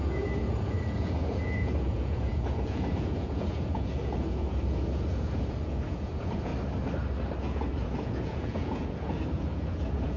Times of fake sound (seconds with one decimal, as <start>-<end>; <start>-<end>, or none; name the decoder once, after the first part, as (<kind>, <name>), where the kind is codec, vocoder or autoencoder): 0.0-6.5 (vocoder, Vocos); 7.4-10.2